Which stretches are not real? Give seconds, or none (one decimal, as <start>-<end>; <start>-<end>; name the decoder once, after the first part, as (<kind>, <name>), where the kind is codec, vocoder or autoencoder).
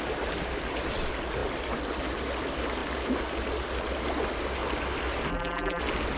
5.3-5.8 (vocoder, BigVGAN v2)